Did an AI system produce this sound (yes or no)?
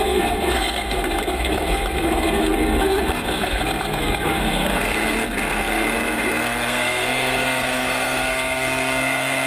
yes